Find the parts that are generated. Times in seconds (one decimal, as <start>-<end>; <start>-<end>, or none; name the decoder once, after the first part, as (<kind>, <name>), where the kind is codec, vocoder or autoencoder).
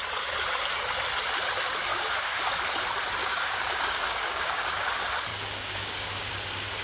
1.9-2.5 (codec, DAC); 3.2-4.8; 5.3-6.3